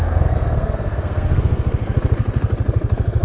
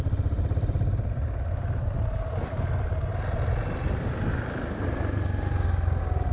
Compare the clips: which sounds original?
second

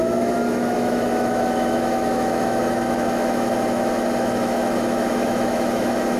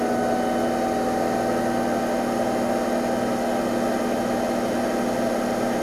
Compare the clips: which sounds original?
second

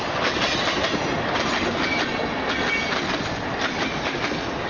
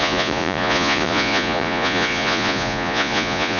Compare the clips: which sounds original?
first